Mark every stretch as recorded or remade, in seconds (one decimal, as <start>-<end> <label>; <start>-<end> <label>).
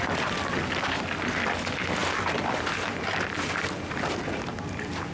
0.0-5.1 recorded